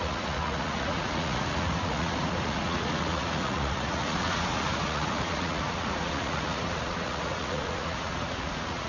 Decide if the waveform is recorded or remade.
remade